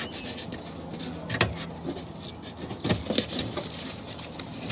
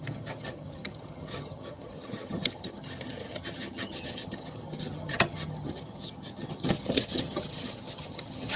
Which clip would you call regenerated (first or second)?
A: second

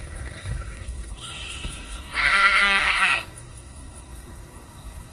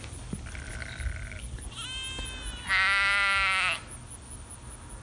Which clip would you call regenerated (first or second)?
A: first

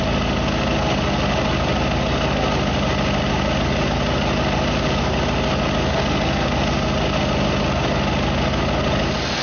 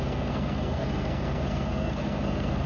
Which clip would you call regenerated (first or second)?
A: second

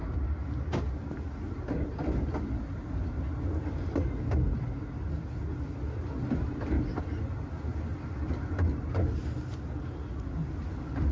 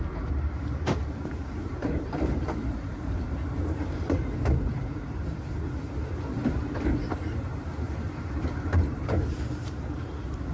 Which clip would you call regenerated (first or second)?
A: second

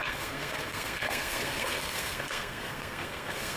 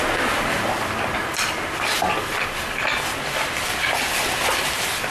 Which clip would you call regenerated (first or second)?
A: first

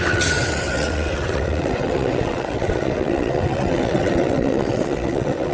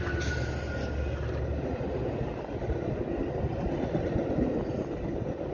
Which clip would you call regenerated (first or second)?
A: first